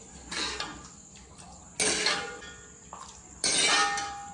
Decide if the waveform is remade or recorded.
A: recorded